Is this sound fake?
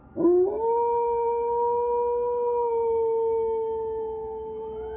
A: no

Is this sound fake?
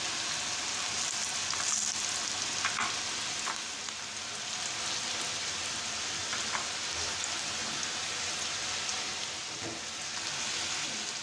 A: no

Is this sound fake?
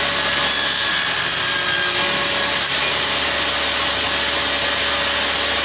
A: no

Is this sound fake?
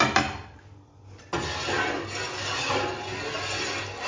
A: no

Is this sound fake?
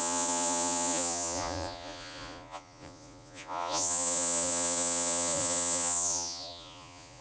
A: yes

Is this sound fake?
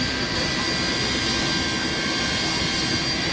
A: no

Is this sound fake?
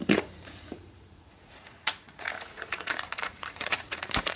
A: yes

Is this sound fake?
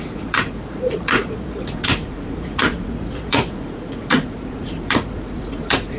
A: yes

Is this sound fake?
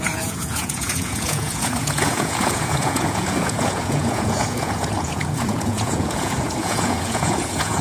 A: yes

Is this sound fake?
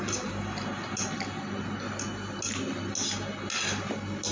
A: no